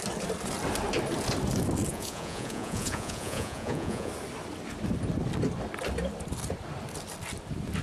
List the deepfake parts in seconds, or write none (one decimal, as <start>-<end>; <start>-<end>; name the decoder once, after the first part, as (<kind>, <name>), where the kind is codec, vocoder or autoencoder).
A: 1.9-4.1 (vocoder, Vocos)